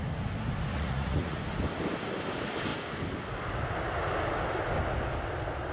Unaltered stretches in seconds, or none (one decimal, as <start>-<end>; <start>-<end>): 0.0-0.7; 1.4-5.7